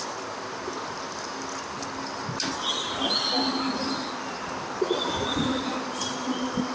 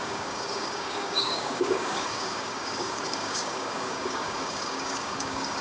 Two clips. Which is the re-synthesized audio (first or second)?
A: second